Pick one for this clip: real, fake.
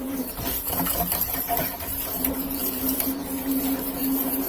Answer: real